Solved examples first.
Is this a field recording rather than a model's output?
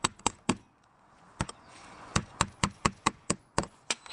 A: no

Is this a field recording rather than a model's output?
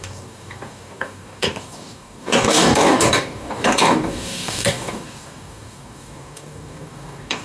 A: no